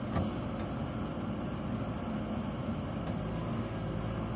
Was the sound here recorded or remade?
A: recorded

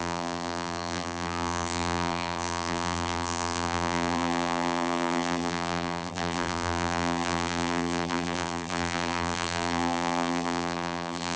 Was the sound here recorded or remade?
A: remade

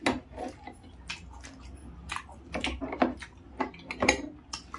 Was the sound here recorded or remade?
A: recorded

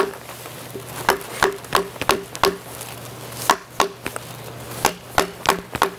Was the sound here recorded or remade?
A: recorded